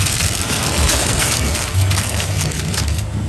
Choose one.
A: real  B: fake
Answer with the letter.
B